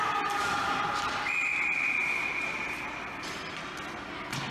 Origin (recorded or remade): recorded